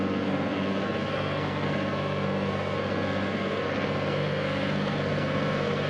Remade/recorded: remade